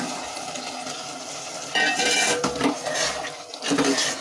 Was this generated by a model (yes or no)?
no